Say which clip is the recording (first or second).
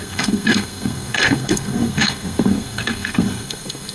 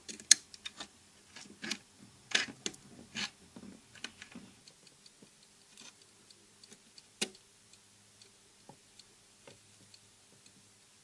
second